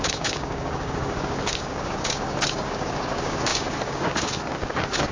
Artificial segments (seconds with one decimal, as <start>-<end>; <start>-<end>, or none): 0.0-5.1